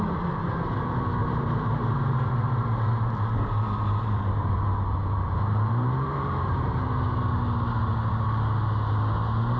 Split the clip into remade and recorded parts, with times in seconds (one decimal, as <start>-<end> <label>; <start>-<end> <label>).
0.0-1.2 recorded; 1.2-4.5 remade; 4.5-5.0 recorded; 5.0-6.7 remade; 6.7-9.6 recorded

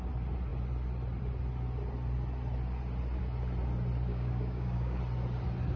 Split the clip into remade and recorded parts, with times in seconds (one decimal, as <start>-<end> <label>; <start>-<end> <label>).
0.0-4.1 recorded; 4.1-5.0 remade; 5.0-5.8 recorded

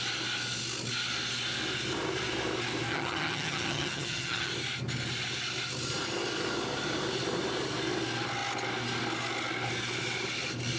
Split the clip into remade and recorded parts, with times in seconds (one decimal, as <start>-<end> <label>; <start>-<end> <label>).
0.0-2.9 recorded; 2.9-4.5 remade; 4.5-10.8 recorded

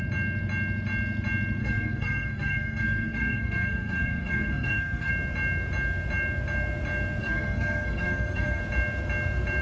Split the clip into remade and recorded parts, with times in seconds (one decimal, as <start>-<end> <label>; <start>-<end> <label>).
0.0-1.6 recorded; 1.6-5.1 remade; 5.1-7.2 recorded; 7.2-8.6 remade; 8.6-9.6 recorded

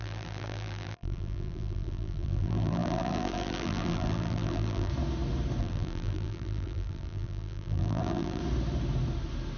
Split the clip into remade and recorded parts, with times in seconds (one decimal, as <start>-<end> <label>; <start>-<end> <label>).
0.0-4.9 remade; 4.9-5.6 recorded; 5.6-8.4 remade; 8.4-9.6 recorded

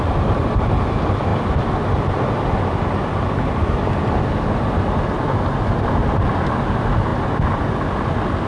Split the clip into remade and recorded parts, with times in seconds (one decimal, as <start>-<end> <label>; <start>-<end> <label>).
0.0-8.5 recorded

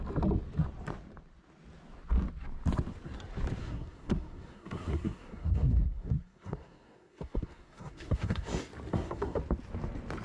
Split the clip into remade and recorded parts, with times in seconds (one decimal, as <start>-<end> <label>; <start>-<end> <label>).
0.0-3.6 recorded; 3.6-8.5 remade; 8.5-8.9 recorded; 8.9-9.4 remade; 9.4-10.2 recorded

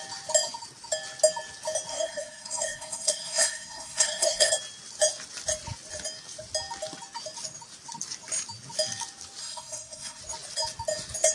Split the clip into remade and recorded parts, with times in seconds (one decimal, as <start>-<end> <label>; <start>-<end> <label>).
0.0-1.9 recorded; 1.9-4.5 remade; 4.5-9.4 recorded; 9.4-10.2 remade; 10.2-11.3 recorded